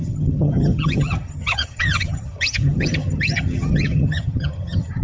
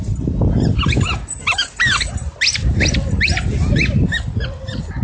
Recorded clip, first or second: second